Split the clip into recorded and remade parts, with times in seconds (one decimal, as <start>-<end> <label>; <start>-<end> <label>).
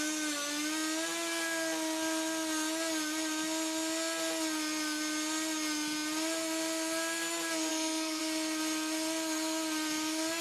0.0-7.7 recorded; 7.7-8.2 remade; 8.2-10.4 recorded